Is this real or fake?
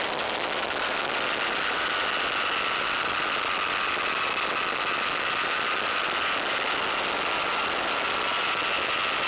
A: real